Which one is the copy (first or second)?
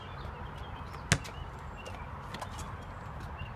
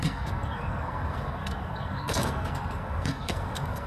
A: second